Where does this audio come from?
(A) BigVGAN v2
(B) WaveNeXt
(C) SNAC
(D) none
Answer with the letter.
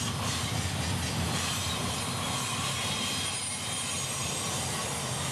D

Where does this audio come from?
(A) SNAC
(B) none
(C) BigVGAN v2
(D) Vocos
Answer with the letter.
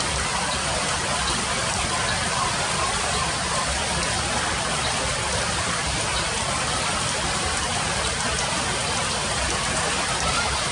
C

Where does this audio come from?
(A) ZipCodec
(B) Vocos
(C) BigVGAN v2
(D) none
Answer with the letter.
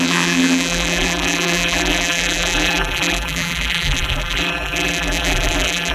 C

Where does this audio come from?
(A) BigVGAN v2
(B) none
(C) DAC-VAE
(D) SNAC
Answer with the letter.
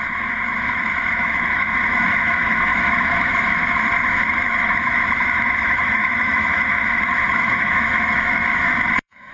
C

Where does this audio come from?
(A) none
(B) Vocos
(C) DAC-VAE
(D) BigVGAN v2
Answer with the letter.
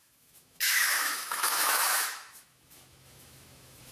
C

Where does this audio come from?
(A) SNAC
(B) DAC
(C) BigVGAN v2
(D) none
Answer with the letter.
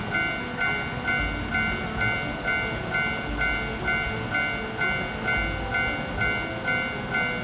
D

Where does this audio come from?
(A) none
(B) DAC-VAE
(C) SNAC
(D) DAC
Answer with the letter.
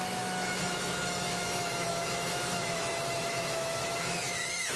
B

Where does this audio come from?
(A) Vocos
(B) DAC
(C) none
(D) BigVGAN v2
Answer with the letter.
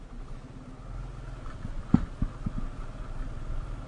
C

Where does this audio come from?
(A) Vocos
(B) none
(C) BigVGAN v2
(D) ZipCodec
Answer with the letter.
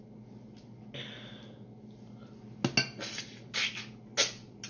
B